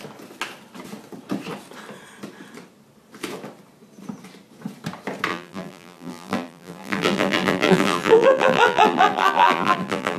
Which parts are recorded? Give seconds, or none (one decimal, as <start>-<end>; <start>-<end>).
0.0-5.3

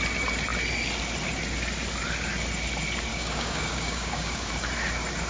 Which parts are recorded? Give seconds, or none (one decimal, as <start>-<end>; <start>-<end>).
0.0-3.1; 4.5-5.3

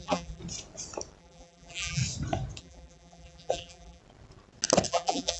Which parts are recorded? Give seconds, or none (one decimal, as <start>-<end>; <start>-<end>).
0.4-1.2; 2.0-2.6; 4.0-4.9